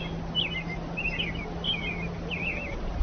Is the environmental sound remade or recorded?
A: recorded